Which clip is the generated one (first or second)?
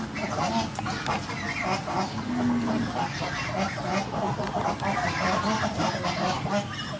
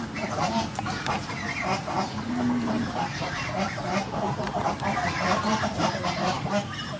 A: second